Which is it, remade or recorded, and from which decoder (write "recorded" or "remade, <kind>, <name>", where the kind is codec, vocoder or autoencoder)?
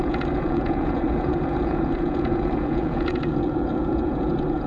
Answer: remade, vocoder, Vocos